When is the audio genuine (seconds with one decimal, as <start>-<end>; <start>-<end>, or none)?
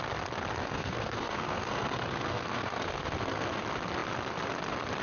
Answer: 0.0-0.6; 3.6-5.0